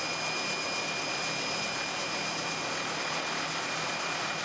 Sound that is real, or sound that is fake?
real